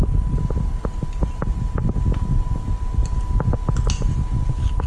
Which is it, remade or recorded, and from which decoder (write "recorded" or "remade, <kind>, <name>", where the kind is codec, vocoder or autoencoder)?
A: recorded